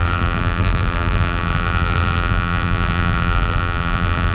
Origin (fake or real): fake